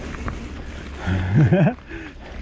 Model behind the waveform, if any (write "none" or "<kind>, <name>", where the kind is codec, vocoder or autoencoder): none